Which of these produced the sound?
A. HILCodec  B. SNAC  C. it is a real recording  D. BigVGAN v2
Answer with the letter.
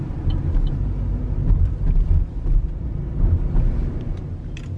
C